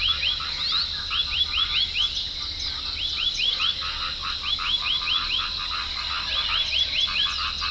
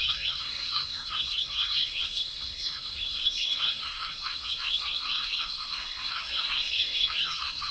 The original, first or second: first